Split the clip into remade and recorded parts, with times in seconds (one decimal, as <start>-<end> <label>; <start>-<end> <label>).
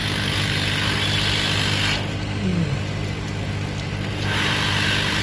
0.0-5.2 recorded